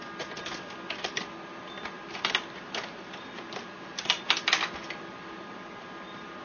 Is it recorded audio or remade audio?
recorded